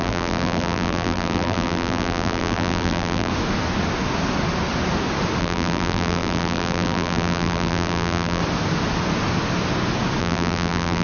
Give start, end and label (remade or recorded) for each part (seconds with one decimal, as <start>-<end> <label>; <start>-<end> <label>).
0.0-3.3 remade; 3.3-5.4 recorded; 5.4-8.4 remade; 8.4-10.2 recorded; 10.2-11.0 remade

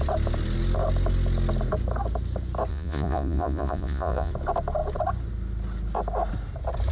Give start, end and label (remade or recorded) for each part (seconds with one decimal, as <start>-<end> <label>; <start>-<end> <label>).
0.0-2.7 recorded; 2.7-4.3 remade; 4.3-6.9 recorded

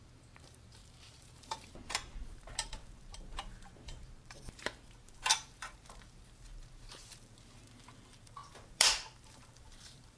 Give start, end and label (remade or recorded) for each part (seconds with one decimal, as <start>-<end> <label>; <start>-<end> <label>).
0.0-10.2 remade

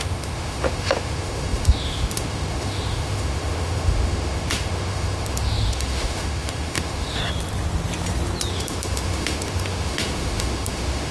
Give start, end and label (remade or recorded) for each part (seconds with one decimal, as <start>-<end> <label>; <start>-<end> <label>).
0.0-7.2 remade; 7.2-8.5 recorded; 8.5-11.1 remade

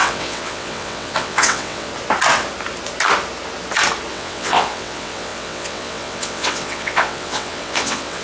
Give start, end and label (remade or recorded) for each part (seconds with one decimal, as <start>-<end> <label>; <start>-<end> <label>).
0.0-1.9 remade; 1.9-4.1 recorded; 4.1-8.2 remade

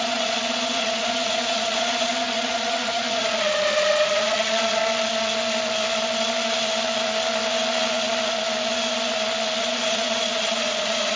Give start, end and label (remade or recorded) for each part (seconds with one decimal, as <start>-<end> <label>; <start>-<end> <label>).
0.0-4.8 remade; 4.8-9.6 recorded; 9.6-11.2 remade

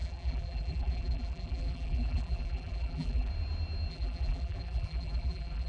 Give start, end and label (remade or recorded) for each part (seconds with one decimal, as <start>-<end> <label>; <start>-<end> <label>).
0.0-3.3 remade; 3.3-3.9 recorded; 3.9-5.7 remade